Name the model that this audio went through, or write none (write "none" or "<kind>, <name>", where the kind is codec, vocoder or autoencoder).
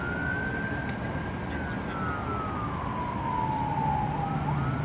none